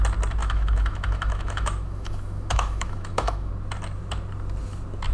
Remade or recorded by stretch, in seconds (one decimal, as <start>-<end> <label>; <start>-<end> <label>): 0.0-0.4 recorded; 0.4-3.5 remade; 3.5-5.1 recorded